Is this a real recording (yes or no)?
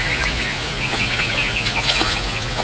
no